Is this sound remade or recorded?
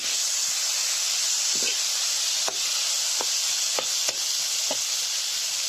recorded